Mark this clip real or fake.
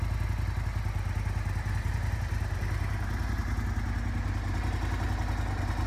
real